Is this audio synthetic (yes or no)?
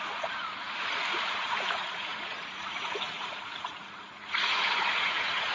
yes